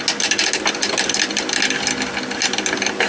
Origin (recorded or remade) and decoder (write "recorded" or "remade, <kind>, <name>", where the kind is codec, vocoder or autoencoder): recorded